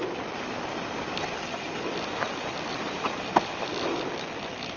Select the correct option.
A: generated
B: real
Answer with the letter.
B